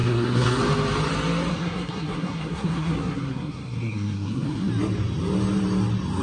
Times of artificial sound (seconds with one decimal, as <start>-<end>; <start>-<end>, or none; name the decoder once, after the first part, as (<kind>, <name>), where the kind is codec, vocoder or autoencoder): 0.0-0.6 (codec, SNAC); 1.5-4.7